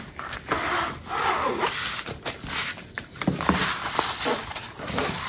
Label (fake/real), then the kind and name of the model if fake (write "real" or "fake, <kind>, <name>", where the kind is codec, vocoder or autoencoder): real